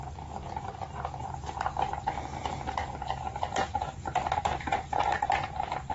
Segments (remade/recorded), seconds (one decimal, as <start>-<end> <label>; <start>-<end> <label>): 0.0-1.2 remade; 1.2-2.5 recorded; 2.5-5.9 remade